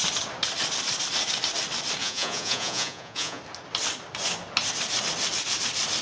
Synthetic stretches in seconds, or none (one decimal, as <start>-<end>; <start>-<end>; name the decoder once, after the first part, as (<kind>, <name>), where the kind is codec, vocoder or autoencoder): 2.0-3.4 (vocoder, Vocos)